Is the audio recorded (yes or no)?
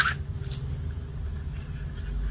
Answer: yes